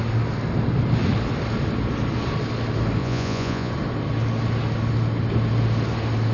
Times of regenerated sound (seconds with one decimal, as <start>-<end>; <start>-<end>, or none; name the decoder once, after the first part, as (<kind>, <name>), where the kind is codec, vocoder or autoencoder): 3.0-3.7 (vocoder, Vocos)